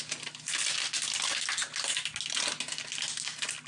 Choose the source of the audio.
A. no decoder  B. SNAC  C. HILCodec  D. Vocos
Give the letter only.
A